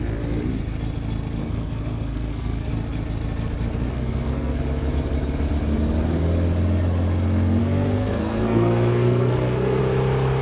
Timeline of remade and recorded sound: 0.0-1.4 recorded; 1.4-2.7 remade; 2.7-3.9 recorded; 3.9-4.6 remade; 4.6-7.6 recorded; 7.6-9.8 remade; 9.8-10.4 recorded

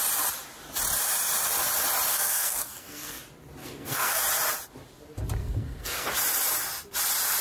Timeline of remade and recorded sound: 0.0-2.1 recorded; 2.1-3.2 remade; 3.2-3.6 recorded; 3.6-4.2 remade; 4.2-5.4 recorded; 5.4-6.1 remade; 6.1-7.4 recorded